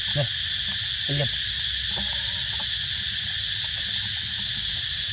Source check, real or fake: real